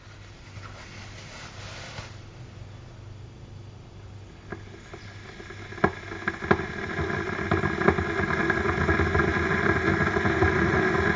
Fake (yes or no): no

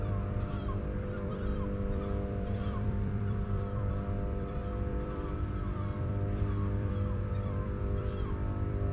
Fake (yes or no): yes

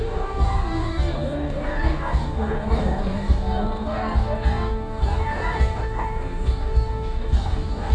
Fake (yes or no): yes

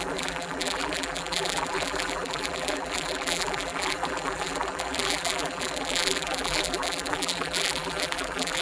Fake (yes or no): yes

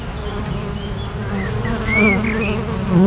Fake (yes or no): no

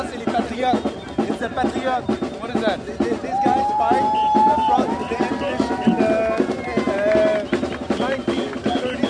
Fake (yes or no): no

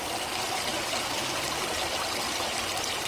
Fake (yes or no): yes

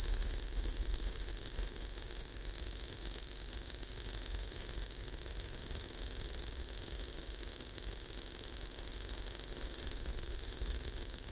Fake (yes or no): yes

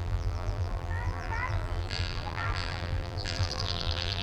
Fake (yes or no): yes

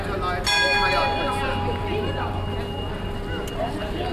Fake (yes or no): no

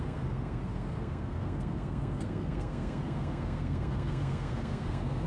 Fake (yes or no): yes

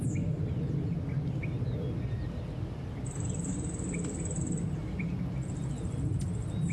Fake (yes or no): no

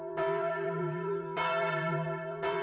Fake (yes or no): yes